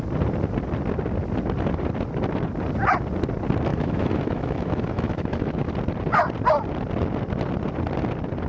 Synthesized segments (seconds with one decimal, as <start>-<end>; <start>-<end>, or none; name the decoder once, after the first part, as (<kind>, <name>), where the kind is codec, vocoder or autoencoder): 3.7-5.7 (autoencoder, DAC-VAE)